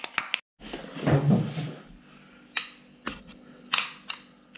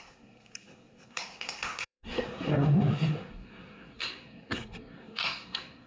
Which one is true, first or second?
first